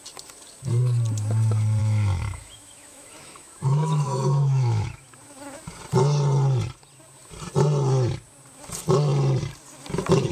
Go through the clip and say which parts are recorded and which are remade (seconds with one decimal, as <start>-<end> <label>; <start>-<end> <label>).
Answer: 0.0-1.8 recorded; 1.8-5.0 remade; 5.0-10.3 recorded